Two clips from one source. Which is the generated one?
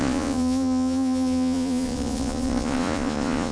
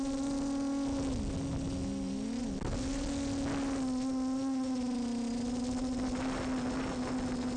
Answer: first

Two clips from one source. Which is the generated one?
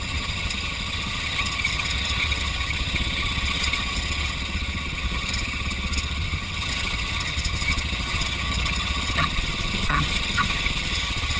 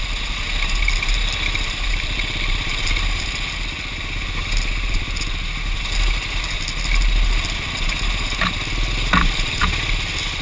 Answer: first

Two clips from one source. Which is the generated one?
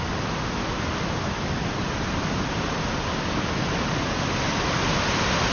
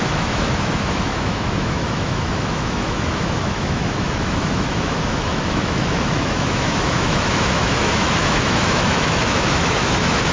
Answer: second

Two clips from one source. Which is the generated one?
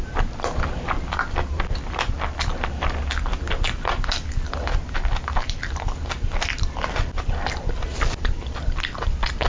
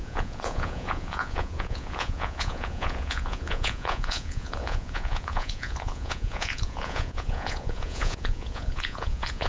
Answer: second